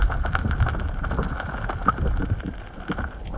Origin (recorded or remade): recorded